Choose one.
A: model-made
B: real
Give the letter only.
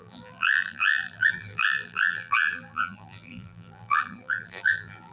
A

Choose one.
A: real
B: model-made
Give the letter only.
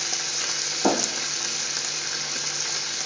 A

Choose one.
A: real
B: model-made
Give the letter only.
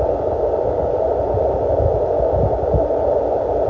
A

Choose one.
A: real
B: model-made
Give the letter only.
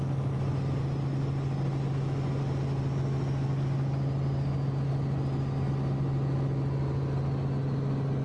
A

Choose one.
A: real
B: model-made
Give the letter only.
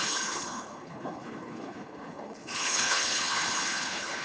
B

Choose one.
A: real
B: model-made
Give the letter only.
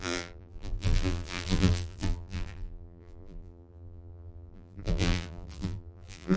B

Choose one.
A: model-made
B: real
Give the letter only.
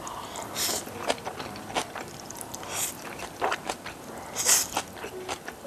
A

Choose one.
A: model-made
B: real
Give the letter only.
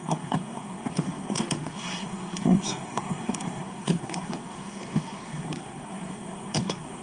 A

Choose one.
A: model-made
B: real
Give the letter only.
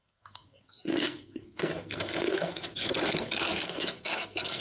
A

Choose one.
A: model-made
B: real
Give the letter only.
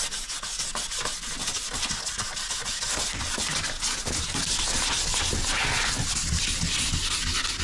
B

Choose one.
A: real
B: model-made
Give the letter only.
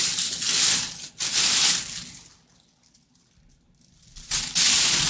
A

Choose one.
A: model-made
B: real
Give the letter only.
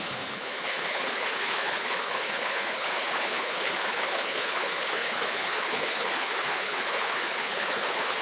A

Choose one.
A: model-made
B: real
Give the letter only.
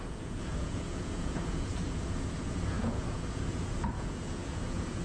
A